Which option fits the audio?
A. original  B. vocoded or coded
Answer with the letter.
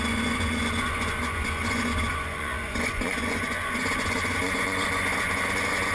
B